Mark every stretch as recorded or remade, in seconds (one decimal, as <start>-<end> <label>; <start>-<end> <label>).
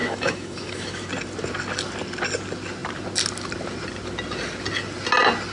0.0-1.1 remade; 1.1-5.5 recorded